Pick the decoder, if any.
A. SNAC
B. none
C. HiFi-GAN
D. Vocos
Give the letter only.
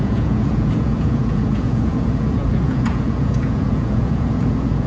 D